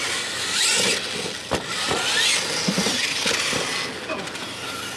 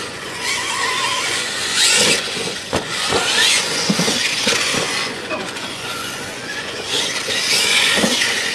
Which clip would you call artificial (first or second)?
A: second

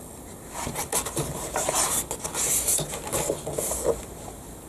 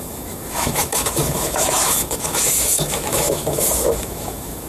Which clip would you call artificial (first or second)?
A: second